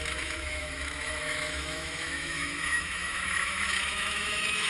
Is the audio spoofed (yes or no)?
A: yes